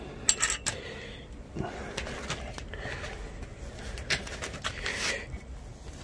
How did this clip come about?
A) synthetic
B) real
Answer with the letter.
B